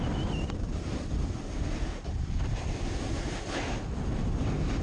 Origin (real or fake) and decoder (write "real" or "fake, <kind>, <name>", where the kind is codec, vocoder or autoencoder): real